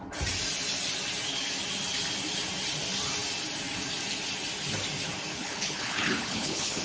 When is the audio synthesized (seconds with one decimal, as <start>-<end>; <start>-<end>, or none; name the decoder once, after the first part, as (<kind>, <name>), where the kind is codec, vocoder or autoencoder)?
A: 5.3-6.8 (codec, HILCodec)